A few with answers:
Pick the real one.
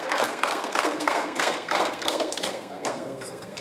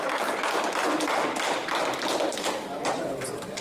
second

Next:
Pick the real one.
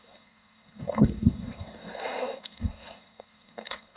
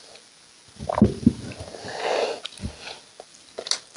second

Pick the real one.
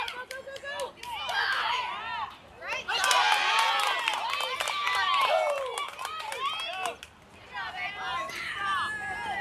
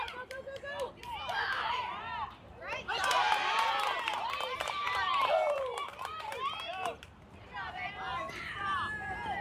first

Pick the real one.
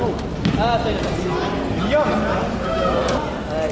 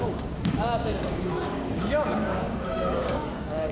first